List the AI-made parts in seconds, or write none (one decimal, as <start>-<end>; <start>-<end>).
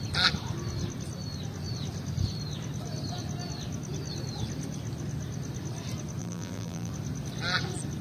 6.2-6.9